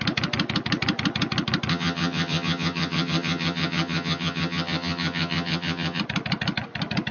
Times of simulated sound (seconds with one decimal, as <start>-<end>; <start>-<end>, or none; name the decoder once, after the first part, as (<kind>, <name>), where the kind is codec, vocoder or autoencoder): 1.7-6.0 (vocoder, HiFi-GAN)